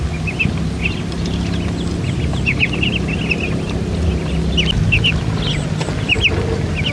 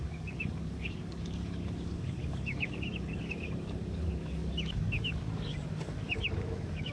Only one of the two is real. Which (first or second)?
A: first